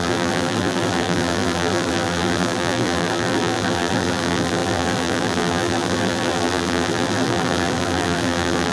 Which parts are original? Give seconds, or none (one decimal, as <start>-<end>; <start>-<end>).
none